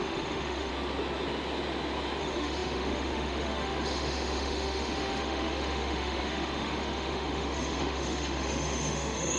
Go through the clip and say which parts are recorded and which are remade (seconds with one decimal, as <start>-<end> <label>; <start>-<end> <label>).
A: 0.0-0.7 remade; 0.7-2.2 recorded; 2.2-9.4 remade